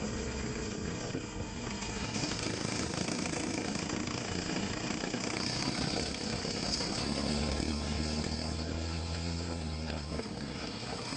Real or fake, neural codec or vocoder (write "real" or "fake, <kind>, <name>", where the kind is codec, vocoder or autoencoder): fake, codec, SNAC